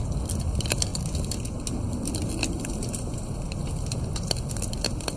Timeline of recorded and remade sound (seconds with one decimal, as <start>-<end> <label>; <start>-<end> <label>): 0.0-5.2 recorded